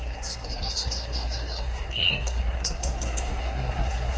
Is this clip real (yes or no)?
no